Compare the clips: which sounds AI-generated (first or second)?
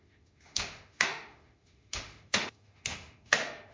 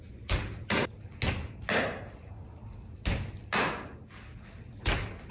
first